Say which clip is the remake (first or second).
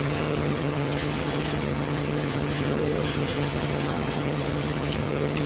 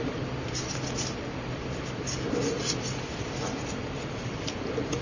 first